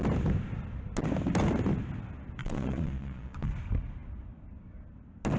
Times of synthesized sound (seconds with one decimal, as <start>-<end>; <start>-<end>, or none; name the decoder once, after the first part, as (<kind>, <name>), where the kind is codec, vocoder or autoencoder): 2.4-3.5 (vocoder, Vocos)